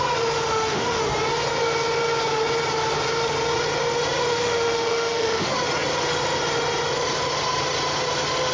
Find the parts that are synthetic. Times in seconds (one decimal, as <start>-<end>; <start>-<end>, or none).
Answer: 0.5-1.0; 4.3-5.5